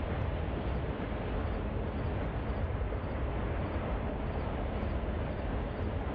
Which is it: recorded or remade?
recorded